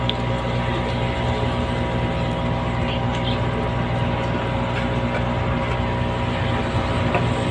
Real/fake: real